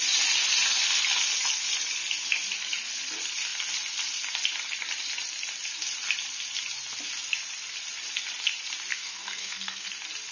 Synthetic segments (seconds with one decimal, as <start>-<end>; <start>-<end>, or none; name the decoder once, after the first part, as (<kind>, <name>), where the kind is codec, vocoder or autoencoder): 8.9-9.9 (codec, SNAC)

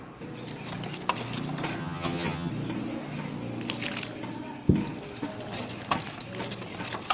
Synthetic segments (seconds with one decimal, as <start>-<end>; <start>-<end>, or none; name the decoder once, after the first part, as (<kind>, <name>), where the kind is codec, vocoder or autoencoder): 1.8-2.5 (vocoder, HiFi-GAN)

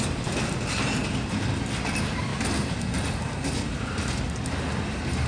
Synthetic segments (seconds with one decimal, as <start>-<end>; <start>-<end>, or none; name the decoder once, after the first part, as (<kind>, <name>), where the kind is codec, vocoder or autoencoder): none